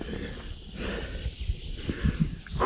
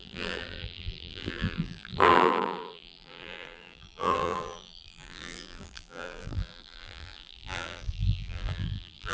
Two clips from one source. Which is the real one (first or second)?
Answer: first